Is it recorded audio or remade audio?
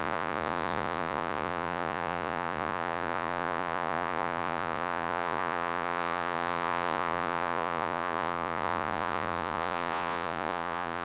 remade